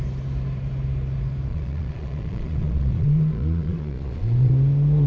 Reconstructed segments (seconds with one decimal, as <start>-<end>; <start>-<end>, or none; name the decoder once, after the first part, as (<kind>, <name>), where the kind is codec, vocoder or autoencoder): 1.5-4.5 (vocoder, Vocos)